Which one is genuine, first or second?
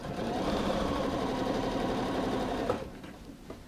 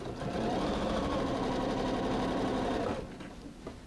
second